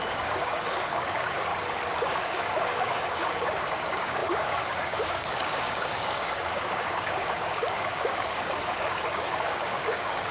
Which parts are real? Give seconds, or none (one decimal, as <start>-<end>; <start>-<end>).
1.5-2.0